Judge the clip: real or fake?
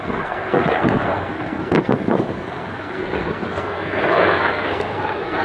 fake